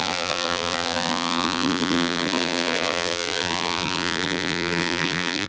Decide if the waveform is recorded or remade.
remade